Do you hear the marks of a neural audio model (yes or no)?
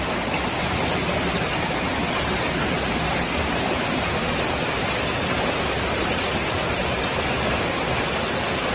no